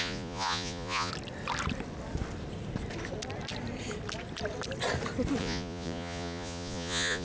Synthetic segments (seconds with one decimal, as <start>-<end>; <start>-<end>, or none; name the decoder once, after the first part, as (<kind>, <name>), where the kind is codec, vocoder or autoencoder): 0.0-1.1 (vocoder, Vocos); 5.4-7.2